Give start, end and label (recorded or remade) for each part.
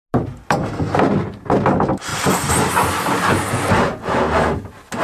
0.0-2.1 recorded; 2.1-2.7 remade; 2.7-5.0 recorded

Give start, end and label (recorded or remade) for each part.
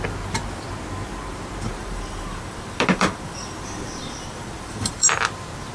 0.0-1.8 recorded; 1.8-5.2 remade; 5.2-5.7 recorded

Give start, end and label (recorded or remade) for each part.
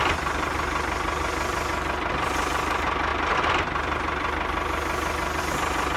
0.0-6.0 remade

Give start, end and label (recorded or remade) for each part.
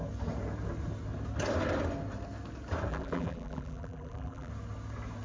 0.0-2.9 recorded; 2.9-4.5 remade; 4.5-5.2 recorded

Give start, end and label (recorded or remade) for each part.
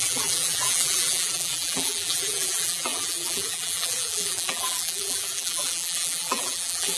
0.0-7.0 remade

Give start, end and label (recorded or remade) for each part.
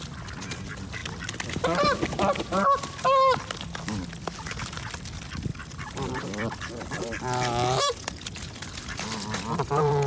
0.0-5.5 recorded; 5.5-10.1 remade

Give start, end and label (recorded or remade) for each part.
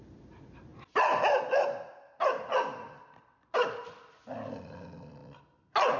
0.0-6.0 recorded